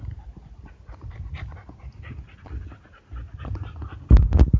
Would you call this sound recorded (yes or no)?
yes